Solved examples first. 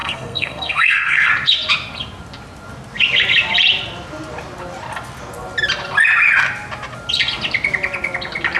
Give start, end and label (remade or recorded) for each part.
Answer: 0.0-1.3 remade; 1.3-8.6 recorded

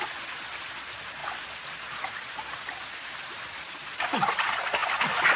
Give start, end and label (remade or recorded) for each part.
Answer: 0.0-5.4 recorded

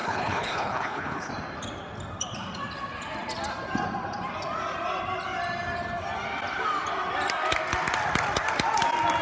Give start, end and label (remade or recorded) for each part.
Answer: 0.0-1.3 remade; 1.3-9.2 recorded

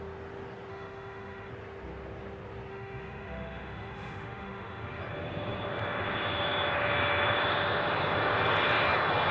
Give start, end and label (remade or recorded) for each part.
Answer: 0.0-0.7 recorded; 0.7-1.5 remade; 1.5-2.7 recorded; 2.7-5.0 remade; 5.0-9.3 recorded

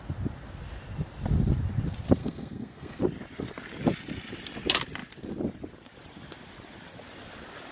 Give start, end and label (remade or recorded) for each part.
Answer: 0.0-2.2 recorded; 2.2-3.0 remade; 3.0-7.7 recorded

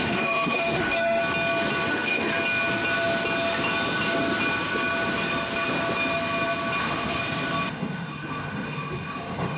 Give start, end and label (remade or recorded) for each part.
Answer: 0.0-1.2 remade; 1.2-1.9 recorded; 1.9-2.3 remade; 2.3-6.8 recorded; 6.8-7.2 remade; 7.2-7.7 recorded; 7.7-9.6 remade